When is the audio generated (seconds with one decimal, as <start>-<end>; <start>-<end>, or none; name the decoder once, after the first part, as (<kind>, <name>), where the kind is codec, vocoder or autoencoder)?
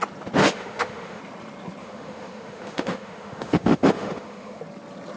0.4-1.2 (autoencoder, DAC-VAE); 1.8-4.6